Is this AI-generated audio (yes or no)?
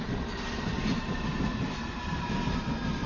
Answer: no